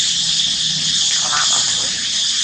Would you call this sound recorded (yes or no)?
yes